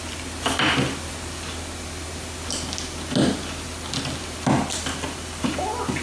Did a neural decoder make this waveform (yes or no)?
no